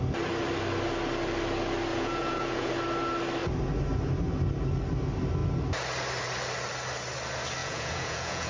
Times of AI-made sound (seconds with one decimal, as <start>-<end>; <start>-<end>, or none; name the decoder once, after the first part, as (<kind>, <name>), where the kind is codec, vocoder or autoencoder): 1.9-2.7 (vocoder, Vocos); 7.6-8.5